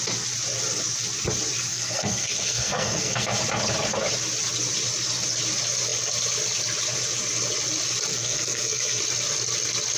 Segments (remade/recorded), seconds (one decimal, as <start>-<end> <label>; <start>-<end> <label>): 0.0-1.7 recorded; 1.7-3.4 remade; 3.4-8.1 recorded; 8.1-9.0 remade; 9.0-10.0 recorded